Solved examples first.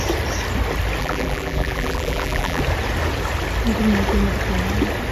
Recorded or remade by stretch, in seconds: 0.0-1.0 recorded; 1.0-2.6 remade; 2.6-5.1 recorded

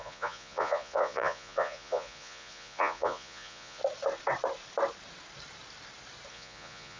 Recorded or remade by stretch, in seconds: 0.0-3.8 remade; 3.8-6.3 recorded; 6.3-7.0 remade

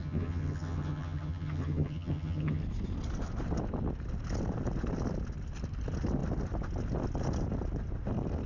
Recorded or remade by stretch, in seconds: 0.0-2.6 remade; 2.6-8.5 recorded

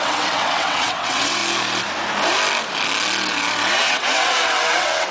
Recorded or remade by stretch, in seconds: 0.0-1.4 remade; 1.4-3.7 recorded; 3.7-5.1 remade